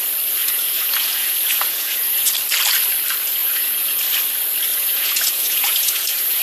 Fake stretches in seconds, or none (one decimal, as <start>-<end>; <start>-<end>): 0.4-2.3; 3.4-4.0; 4.7-6.4